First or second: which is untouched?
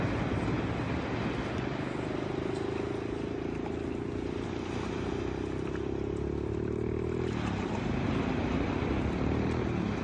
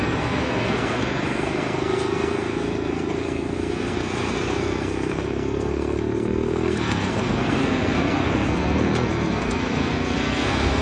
first